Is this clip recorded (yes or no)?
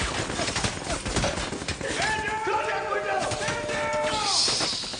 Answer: yes